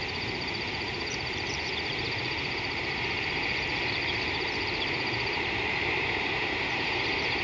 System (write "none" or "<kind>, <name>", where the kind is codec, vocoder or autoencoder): vocoder, BigVGAN v2